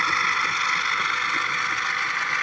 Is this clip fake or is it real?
real